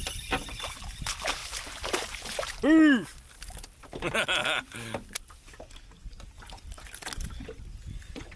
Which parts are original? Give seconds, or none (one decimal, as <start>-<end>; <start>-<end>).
0.0-8.4